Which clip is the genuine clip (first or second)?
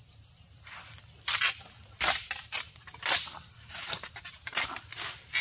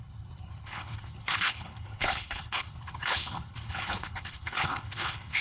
first